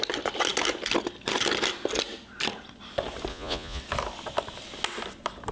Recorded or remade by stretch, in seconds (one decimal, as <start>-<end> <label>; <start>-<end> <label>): 0.0-3.3 recorded; 3.3-3.8 remade; 3.8-5.5 recorded